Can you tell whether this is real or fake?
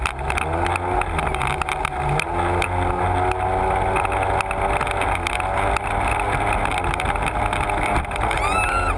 real